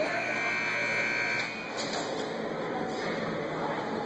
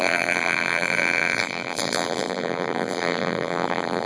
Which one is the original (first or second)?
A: first